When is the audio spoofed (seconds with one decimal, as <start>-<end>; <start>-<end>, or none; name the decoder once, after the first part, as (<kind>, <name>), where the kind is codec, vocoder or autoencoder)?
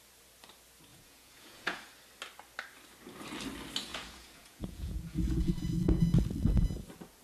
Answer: 0.9-1.8 (vocoder, Vocos); 3.9-5.5